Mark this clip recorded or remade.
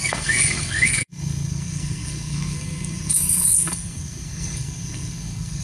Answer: remade